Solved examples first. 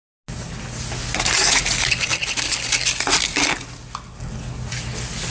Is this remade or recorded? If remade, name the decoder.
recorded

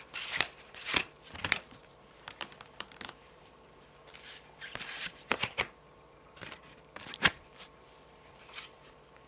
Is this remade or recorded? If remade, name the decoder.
remade, vocoder, BigVGAN v2